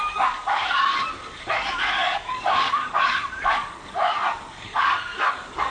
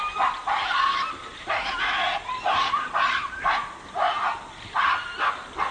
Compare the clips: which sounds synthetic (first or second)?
first